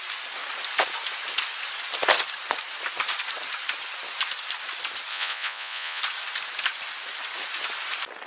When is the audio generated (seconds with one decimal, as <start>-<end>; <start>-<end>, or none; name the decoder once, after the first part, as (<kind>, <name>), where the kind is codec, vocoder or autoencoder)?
5.1-6.0 (vocoder, Vocos)